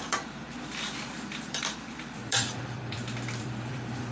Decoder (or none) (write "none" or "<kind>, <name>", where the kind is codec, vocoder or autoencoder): vocoder, BigVGAN v2